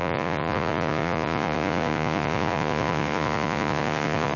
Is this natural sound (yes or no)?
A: no